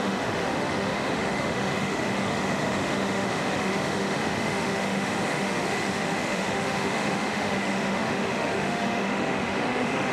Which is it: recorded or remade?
remade